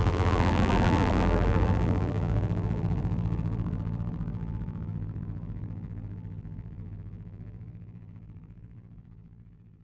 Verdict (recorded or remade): remade